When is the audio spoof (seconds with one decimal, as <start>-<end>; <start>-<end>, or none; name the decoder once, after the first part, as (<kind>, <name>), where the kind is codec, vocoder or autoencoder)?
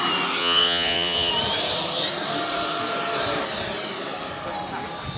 0.4-1.3 (vocoder, Vocos)